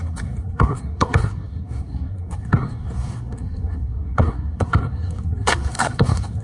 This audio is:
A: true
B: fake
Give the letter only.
B